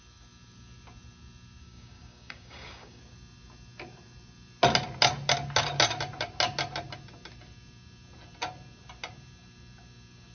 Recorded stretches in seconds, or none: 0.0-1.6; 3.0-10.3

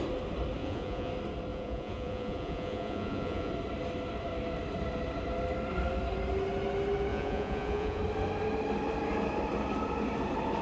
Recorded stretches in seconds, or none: 0.0-0.6; 1.1-1.5; 3.5-7.1; 8.0-10.6

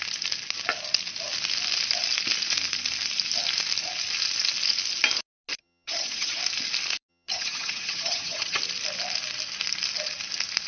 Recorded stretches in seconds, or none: 0.0-5.6; 6.4-7.1; 8.6-10.7

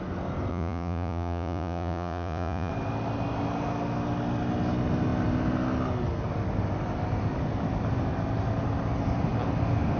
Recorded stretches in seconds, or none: 0.0-0.5; 2.7-10.0